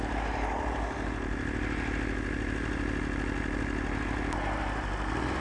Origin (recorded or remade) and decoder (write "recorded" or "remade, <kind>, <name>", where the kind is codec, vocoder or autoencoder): recorded